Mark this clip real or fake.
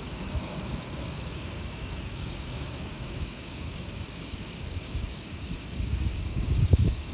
fake